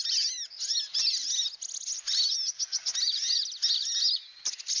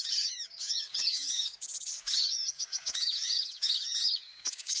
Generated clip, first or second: second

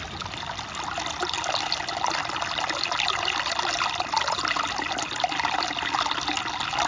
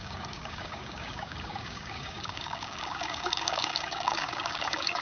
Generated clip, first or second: second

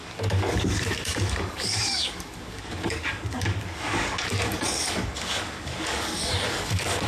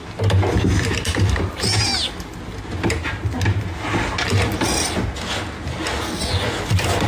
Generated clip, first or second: first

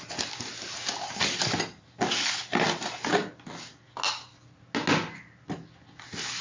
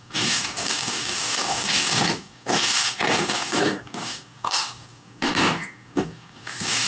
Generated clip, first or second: second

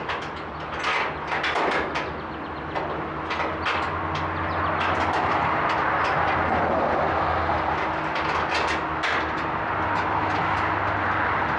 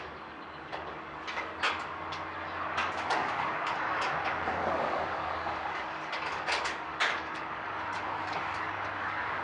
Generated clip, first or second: second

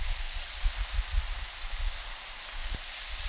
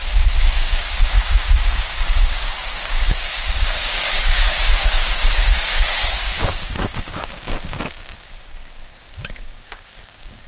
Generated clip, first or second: second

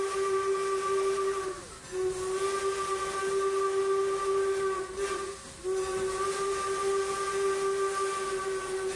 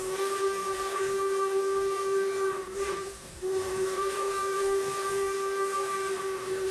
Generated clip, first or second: second